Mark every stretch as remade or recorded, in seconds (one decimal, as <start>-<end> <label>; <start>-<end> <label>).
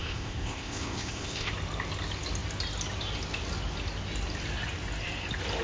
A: 0.0-1.5 remade; 1.5-5.6 recorded